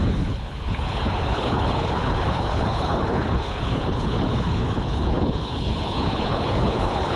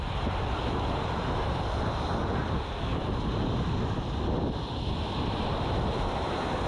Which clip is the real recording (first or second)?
second